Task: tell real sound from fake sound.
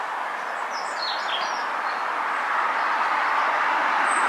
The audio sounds real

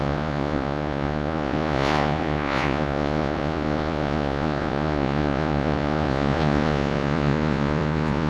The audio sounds fake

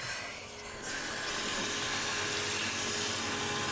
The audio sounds real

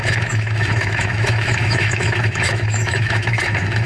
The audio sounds fake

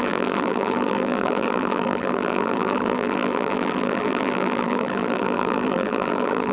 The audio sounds fake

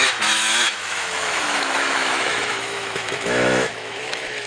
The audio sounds fake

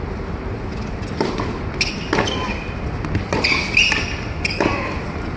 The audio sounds real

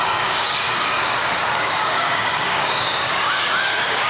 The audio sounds fake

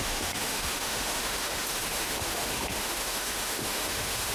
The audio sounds fake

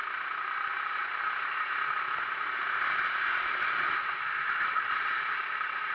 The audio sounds real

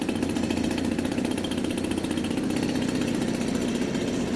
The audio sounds real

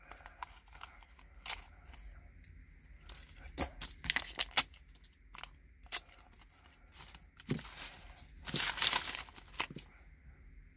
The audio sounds real